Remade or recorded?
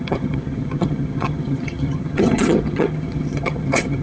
remade